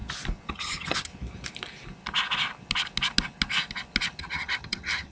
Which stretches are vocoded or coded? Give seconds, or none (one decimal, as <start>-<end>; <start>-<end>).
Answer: 0.5-1.1; 4.2-5.1

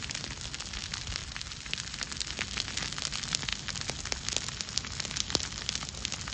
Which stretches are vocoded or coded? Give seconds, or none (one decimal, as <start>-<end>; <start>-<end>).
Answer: 1.2-2.0

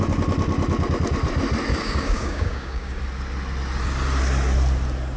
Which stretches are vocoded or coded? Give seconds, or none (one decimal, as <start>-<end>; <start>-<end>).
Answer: 1.7-3.0

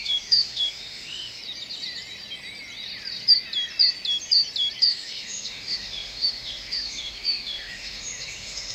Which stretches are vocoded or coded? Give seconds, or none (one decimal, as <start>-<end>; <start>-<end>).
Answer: 0.0-1.4; 4.8-8.7

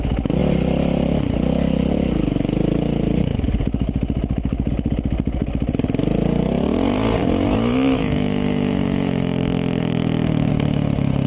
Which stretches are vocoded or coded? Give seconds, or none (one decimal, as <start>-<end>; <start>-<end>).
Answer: 7.2-10.5

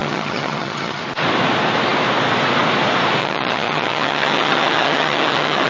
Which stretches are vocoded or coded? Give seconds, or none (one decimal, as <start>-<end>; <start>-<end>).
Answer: 0.0-1.0; 3.2-5.7

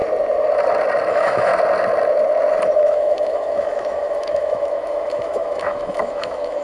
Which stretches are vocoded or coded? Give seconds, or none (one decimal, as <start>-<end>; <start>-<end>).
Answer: 1.1-1.5; 2.6-6.6

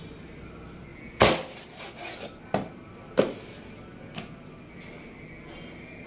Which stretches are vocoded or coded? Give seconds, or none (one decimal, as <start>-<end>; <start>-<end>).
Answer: none